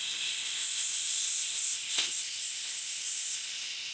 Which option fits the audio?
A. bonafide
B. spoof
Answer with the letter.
B